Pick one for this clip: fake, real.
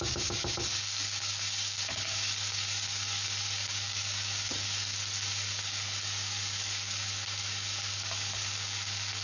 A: fake